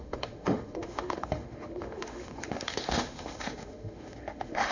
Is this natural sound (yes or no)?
no